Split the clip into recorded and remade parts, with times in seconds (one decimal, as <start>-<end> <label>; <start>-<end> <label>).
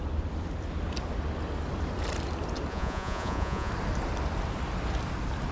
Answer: 0.0-2.7 recorded; 2.7-3.7 remade; 3.7-5.5 recorded